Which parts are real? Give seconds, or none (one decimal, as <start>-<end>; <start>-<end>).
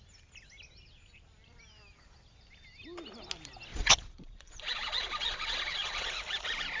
0.0-3.7; 6.1-6.8